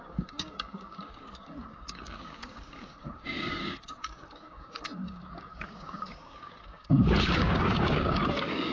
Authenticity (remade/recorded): remade